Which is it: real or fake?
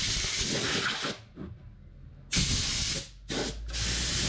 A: real